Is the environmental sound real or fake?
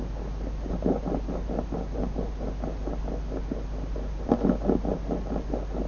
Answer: real